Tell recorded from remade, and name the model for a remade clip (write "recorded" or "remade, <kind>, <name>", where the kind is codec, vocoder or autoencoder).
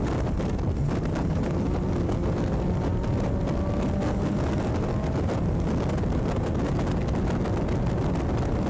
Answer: recorded